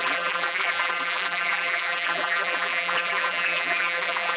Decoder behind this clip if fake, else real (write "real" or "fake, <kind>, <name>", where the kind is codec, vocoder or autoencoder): fake, vocoder, BigVGAN v2